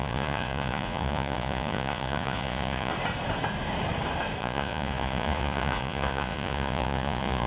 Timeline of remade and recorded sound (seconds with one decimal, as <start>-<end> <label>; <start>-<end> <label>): 0.0-2.9 remade; 2.9-4.4 recorded; 4.4-7.5 remade